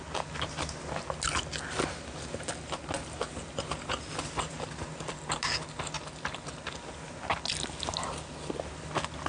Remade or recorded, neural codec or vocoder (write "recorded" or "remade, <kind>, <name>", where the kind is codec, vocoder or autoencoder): recorded